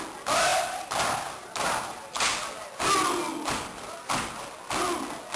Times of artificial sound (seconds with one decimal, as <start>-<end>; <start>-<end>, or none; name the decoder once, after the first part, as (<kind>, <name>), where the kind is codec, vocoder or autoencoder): 0.5-2.2 (vocoder, BigVGAN v2); 3.3-4.6